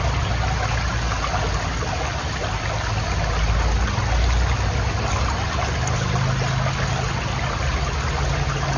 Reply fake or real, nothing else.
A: real